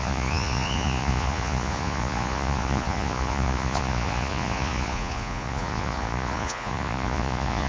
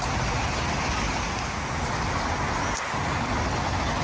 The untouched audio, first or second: second